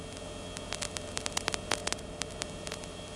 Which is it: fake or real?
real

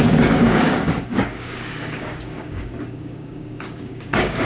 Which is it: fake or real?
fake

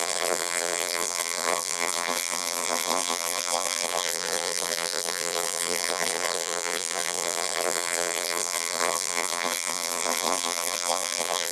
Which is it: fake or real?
fake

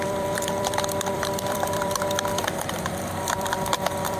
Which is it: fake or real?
fake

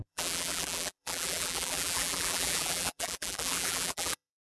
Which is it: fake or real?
fake